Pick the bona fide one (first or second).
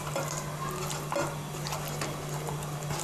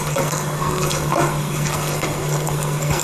first